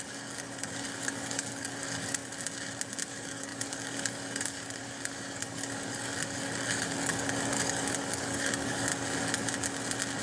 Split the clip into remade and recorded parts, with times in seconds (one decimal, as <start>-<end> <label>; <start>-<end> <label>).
0.0-2.2 remade; 2.2-3.1 recorded; 3.1-8.9 remade; 8.9-10.2 recorded